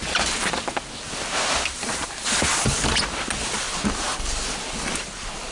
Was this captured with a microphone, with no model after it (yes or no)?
yes